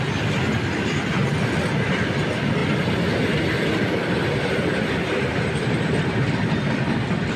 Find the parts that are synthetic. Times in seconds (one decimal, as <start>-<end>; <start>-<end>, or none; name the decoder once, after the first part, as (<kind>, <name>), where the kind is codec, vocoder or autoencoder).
none